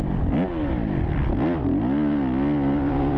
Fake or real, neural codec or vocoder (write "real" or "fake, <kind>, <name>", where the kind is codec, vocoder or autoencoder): real